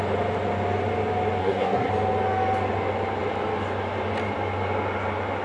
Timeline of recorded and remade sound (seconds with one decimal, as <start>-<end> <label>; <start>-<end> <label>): 0.0-1.4 recorded; 1.4-1.9 remade; 1.9-5.4 recorded